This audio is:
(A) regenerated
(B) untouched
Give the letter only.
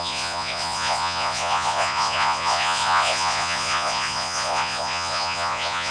A